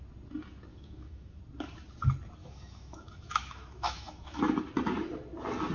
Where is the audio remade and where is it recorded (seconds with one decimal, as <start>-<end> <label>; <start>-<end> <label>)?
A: 0.0-0.7 recorded; 0.7-1.4 remade; 1.4-2.4 recorded; 2.4-4.4 remade; 4.4-5.7 recorded

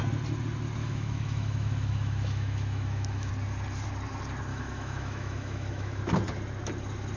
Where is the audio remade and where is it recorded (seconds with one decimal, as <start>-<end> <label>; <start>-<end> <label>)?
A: 0.0-0.8 recorded; 0.8-3.3 remade; 3.3-4.5 recorded; 4.5-6.0 remade; 6.0-7.2 recorded

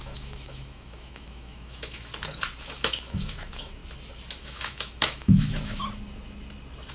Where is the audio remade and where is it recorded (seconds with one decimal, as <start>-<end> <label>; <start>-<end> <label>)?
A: 0.0-2.1 remade; 2.1-2.6 recorded; 2.6-3.8 remade; 3.8-4.4 recorded; 4.4-5.8 remade; 5.8-6.9 recorded

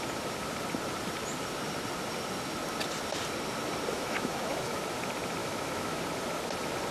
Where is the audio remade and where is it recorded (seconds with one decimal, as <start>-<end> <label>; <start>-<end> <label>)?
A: 0.0-3.9 recorded; 3.9-4.8 remade; 4.8-5.4 recorded; 5.4-6.0 remade; 6.0-6.9 recorded

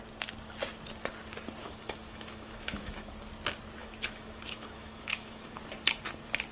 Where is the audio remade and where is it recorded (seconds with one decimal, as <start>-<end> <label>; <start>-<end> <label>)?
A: 0.0-1.6 recorded; 1.6-3.1 remade; 3.1-3.8 recorded; 3.8-5.6 remade; 5.6-6.5 recorded

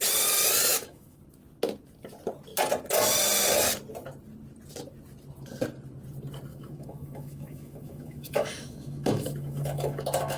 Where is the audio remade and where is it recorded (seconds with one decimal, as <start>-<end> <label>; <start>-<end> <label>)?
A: 0.0-0.7 recorded; 0.7-1.2 remade; 1.2-6.5 recorded; 6.5-10.4 remade

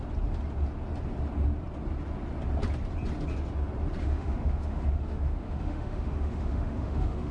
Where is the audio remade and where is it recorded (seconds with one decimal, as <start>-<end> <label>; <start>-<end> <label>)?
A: 0.0-4.0 recorded; 4.0-7.3 remade

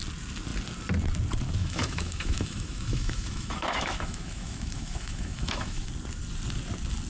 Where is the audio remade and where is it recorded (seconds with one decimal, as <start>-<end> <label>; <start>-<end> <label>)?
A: 0.0-1.6 recorded; 1.6-5.9 remade; 5.9-7.1 recorded